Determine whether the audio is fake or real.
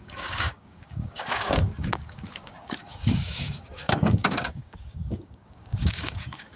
fake